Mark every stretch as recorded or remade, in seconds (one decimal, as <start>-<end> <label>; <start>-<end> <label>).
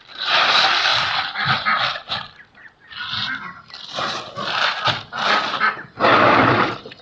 0.0-7.0 recorded